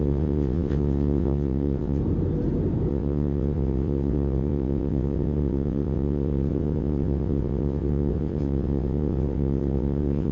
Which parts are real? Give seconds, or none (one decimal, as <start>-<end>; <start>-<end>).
2.0-2.9